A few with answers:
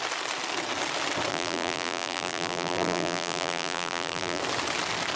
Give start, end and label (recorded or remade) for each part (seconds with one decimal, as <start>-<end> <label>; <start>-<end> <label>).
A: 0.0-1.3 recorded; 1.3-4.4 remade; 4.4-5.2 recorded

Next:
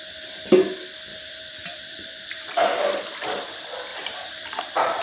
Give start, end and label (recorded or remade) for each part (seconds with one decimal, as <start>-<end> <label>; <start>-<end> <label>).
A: 0.0-1.1 recorded; 1.1-3.4 remade; 3.4-3.9 recorded; 3.9-5.0 remade

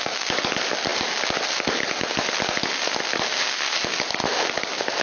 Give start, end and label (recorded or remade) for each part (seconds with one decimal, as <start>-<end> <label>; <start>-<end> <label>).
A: 0.0-5.0 recorded

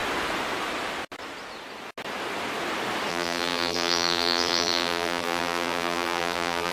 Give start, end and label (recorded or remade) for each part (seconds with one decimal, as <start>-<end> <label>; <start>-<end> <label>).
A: 0.0-3.1 recorded; 3.1-6.7 remade